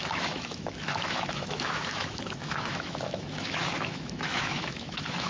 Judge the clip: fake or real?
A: fake